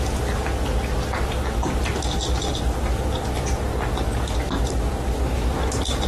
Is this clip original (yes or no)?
yes